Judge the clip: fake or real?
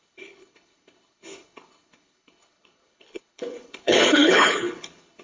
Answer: fake